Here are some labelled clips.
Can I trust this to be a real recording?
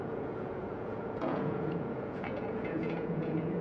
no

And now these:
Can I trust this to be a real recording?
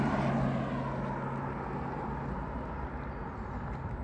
yes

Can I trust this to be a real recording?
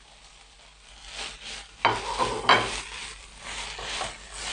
yes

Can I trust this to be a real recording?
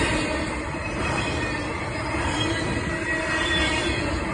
yes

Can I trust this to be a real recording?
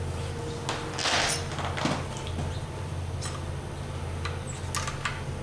yes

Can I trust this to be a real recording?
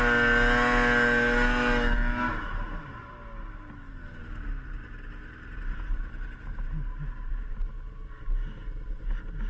yes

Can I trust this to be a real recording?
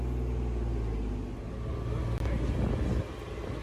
yes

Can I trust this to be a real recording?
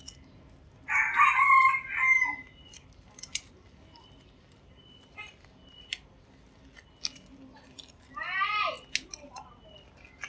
yes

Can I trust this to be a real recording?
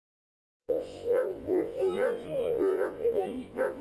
no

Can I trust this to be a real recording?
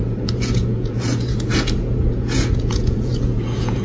no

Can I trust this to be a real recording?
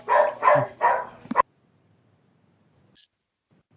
yes